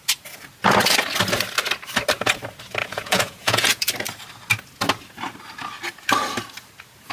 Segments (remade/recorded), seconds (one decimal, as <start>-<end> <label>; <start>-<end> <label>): 0.0-2.8 recorded; 2.8-3.9 remade; 3.9-7.1 recorded